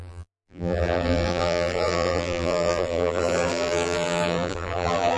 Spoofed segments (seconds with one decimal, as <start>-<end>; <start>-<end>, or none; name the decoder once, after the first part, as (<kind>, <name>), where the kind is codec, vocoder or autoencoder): 0.0-5.2 (vocoder, BigVGAN v2)